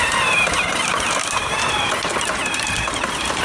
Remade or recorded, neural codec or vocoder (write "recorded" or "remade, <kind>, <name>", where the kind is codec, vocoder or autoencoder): recorded